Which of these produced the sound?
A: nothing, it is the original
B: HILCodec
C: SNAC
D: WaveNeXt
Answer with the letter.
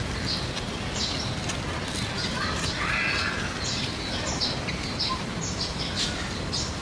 A